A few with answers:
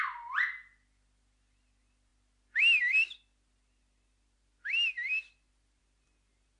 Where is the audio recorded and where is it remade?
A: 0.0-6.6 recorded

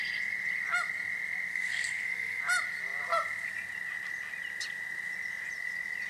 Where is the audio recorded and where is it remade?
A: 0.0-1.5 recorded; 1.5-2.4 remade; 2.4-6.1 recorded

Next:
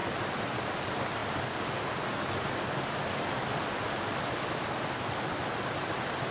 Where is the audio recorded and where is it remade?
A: 0.0-6.3 recorded

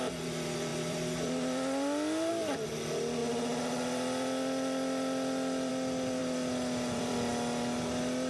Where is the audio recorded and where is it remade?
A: 0.0-0.7 recorded; 0.7-2.3 remade; 2.3-6.2 recorded; 6.2-7.3 remade; 7.3-8.3 recorded